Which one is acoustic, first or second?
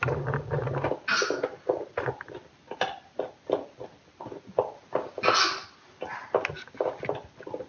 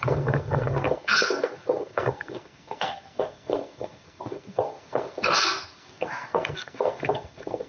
first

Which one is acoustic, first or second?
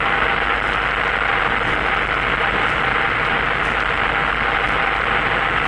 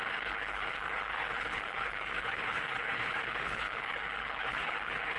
first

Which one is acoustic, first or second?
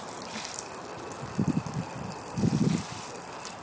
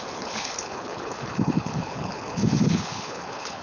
first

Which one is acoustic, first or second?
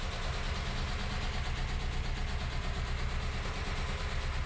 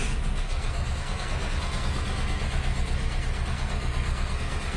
first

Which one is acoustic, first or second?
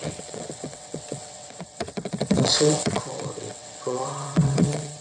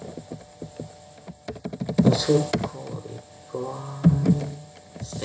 second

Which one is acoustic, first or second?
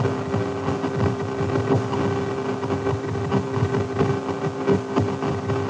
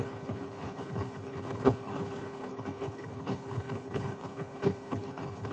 first